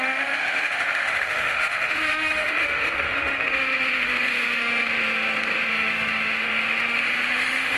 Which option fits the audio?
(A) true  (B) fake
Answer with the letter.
B